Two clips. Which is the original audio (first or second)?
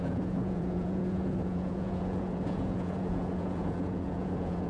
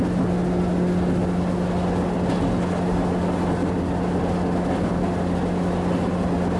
second